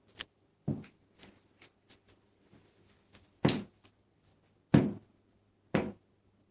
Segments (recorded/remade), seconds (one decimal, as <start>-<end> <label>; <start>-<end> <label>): 0.0-0.5 remade; 0.5-3.7 recorded; 3.7-4.3 remade; 4.3-5.0 recorded; 5.0-6.5 remade